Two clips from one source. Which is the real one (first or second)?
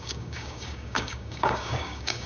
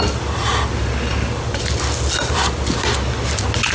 second